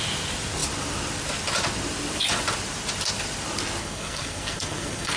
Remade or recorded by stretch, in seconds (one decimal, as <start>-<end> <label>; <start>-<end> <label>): 0.0-3.8 recorded; 3.8-5.2 remade